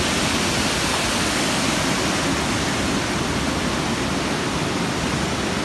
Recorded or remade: recorded